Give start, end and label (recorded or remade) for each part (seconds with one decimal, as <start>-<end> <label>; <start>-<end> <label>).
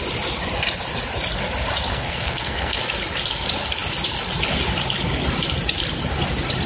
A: 0.0-1.9 recorded; 1.9-2.8 remade; 2.8-6.7 recorded